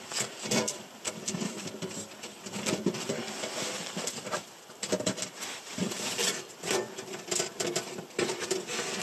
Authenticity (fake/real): fake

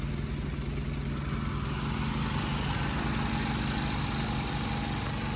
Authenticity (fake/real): real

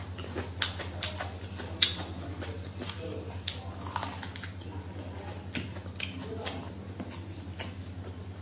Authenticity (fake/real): real